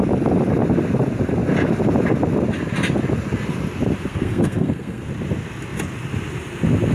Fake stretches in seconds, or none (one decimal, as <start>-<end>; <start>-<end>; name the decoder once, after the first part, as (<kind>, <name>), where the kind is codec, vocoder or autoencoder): 4.1-5.1 (codec, SNAC)